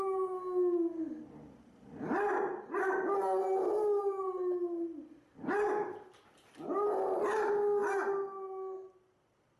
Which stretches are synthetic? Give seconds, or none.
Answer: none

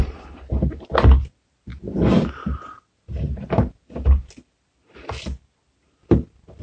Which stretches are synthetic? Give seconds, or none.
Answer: none

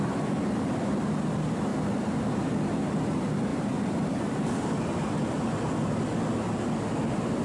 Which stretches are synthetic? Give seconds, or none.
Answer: none

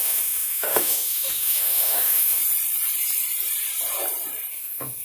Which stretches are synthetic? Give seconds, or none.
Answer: 0.0-2.4 (autoencoder, DAC-VAE); 4.5-5.0

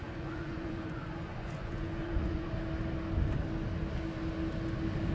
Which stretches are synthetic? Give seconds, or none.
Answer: 0.0-2.5 (vocoder, Vocos)

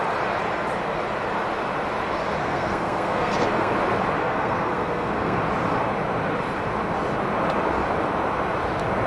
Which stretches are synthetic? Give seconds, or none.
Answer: 2.4-3.7 (codec, SNAC); 4.2-5.4